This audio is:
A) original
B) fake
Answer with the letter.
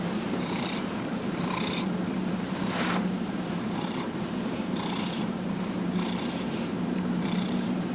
B